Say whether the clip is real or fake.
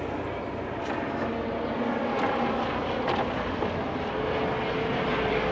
real